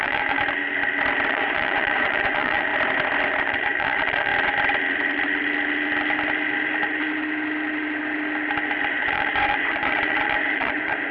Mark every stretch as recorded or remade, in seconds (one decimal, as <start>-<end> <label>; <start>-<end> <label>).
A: 0.0-0.4 remade; 0.4-1.3 recorded; 1.3-2.7 remade; 2.7-3.4 recorded; 3.4-4.3 remade; 4.3-8.9 recorded; 8.9-11.1 remade